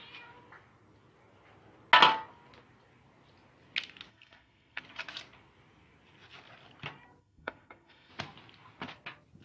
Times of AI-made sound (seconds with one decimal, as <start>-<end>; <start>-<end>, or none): 4.1-4.8; 7.2-8.1